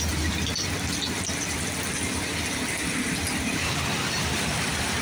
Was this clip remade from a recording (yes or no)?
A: no